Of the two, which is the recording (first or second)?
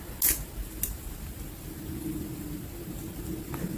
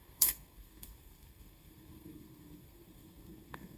first